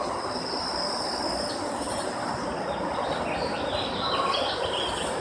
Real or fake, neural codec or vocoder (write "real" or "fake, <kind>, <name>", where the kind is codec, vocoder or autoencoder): real